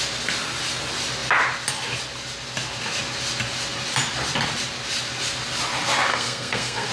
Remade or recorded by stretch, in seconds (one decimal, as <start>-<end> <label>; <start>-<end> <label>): 0.0-6.1 recorded; 6.1-6.9 remade